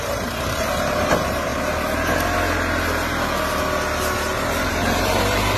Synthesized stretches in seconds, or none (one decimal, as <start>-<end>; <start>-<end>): 0.0-1.5; 4.7-5.6